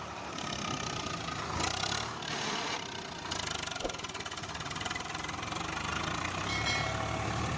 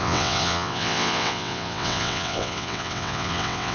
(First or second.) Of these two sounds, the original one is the first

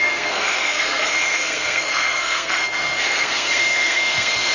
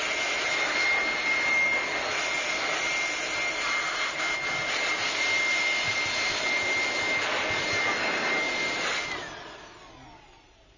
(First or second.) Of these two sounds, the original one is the second